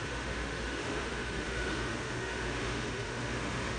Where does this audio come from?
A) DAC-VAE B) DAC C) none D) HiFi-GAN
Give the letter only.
A